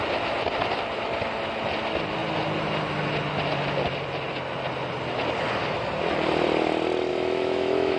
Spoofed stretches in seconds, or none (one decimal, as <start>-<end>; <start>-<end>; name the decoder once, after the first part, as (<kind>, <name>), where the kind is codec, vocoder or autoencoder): 7.1-8.0 (autoencoder, DAC-VAE)